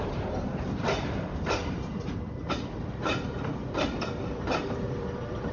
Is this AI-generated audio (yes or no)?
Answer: yes